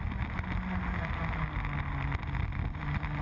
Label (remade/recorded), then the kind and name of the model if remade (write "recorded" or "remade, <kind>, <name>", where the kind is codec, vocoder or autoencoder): recorded